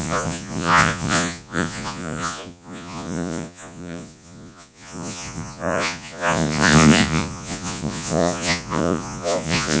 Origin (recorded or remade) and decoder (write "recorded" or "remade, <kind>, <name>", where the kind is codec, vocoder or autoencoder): remade, vocoder, Vocos